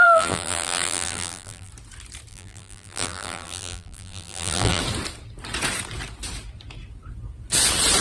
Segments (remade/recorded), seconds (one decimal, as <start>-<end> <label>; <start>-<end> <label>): 0.0-1.7 remade; 1.7-2.3 recorded; 2.3-4.8 remade; 4.8-8.0 recorded